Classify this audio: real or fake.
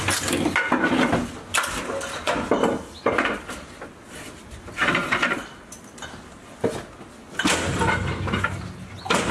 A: real